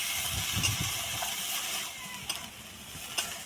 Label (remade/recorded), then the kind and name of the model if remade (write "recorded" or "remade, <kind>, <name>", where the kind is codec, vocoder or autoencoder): recorded